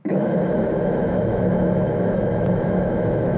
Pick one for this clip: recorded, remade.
remade